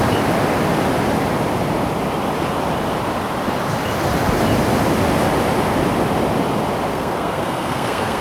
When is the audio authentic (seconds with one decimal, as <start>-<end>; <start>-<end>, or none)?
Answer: 0.0-6.9